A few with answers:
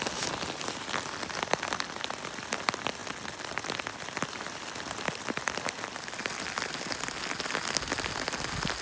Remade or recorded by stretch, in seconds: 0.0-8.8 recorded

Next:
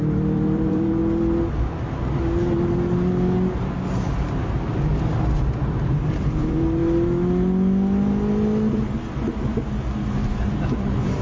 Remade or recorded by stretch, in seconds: 0.0-1.0 remade; 1.0-5.7 recorded; 5.7-6.8 remade; 6.8-9.7 recorded; 9.7-11.2 remade

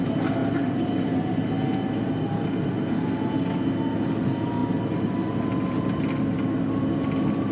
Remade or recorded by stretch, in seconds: 0.0-0.4 recorded; 0.4-1.3 remade; 1.3-7.5 recorded

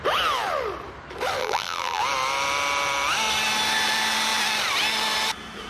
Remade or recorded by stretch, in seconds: 0.0-1.4 recorded; 1.4-2.0 remade; 2.0-5.7 recorded

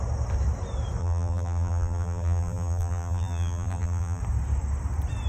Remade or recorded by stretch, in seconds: 0.0-1.0 recorded; 1.0-4.2 remade; 4.2-5.3 recorded

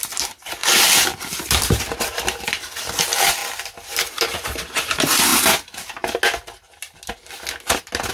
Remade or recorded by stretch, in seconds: 0.0-3.4 remade; 3.4-4.1 recorded; 4.1-5.3 remade; 5.3-8.1 recorded

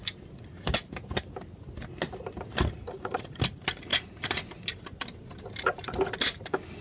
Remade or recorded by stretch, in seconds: 0.0-6.8 recorded